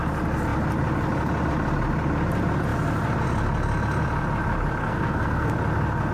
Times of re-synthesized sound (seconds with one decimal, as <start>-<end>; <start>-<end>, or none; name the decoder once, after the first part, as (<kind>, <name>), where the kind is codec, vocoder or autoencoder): 4.8-5.5 (codec, SNAC)

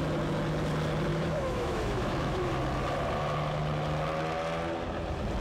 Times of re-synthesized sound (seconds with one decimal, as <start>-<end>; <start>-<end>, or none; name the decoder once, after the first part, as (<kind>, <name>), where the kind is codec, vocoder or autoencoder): 1.1-2.5 (autoencoder, DAC-VAE)

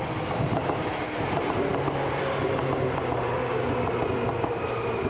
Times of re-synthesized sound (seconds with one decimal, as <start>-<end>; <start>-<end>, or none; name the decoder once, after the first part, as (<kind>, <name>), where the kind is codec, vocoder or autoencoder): none

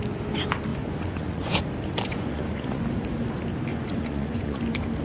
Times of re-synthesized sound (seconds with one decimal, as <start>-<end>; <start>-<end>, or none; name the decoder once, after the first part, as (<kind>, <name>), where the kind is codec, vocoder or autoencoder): 0.7-1.6 (vocoder, Vocos); 2.1-2.8; 3.7-4.6